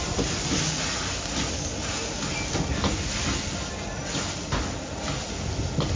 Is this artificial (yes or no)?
no